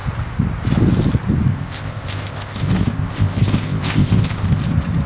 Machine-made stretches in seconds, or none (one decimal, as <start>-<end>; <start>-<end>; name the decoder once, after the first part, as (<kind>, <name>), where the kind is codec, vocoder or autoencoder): 1.5-4.6 (codec, ZipCodec)